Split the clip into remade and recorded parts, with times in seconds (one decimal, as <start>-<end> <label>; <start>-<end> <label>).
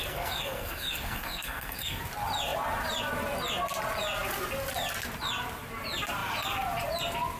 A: 0.0-2.0 remade; 2.0-7.4 recorded